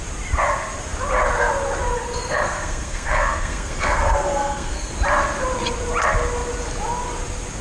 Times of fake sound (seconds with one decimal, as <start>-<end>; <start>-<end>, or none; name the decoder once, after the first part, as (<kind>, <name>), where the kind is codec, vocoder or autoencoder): 1.9-4.9 (codec, SNAC)